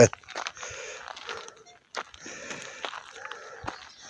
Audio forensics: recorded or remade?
recorded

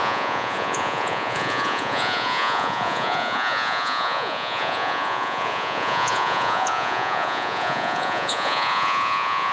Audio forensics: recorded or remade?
remade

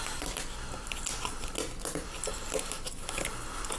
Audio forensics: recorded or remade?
recorded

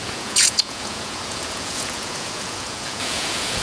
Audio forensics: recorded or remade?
remade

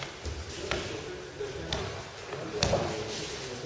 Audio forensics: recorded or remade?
recorded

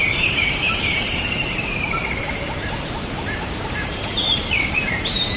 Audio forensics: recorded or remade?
remade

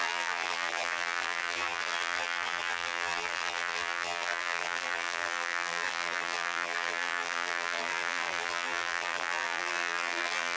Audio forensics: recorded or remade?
remade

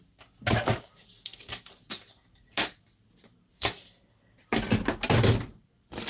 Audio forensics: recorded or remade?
recorded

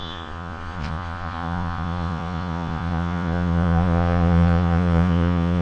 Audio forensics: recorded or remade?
remade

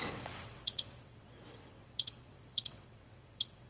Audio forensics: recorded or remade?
remade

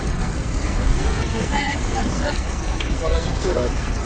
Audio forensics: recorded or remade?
remade